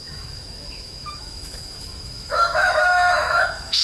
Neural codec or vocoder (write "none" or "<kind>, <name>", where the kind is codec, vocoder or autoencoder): autoencoder, DAC-VAE